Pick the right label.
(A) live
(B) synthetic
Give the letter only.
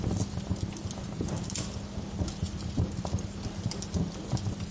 A